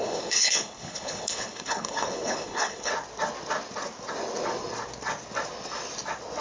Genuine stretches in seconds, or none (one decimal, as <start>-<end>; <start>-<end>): 2.9-6.4